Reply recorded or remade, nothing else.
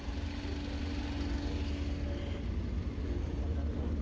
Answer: recorded